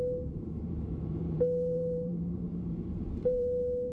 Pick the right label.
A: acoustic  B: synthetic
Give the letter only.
B